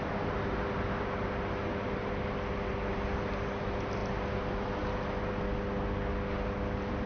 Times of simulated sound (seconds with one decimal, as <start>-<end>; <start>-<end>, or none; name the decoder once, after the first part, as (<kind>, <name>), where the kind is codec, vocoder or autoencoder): none